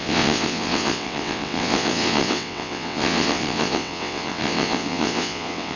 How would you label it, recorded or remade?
remade